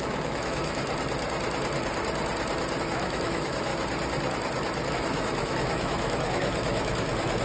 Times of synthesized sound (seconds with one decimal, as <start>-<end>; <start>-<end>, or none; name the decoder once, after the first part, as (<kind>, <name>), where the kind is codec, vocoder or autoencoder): 0.0-0.8 (autoencoder, DAC-VAE); 2.8-3.7; 4.9-7.4